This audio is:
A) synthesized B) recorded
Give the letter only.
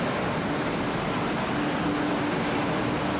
B